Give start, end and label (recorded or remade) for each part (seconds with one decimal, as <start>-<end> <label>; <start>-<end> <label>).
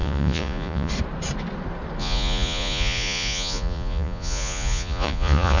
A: 0.0-0.9 remade; 0.9-2.0 recorded; 2.0-5.6 remade